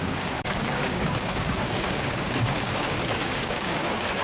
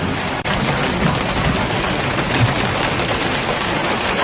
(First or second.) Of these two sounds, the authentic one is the second